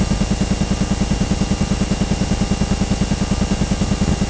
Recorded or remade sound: recorded